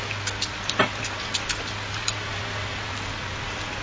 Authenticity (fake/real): real